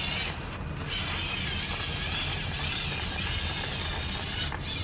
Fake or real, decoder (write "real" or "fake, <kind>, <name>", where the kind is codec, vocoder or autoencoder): real